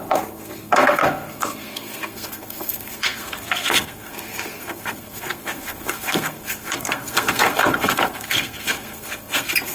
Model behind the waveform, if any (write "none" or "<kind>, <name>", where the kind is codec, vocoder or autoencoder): codec, SNAC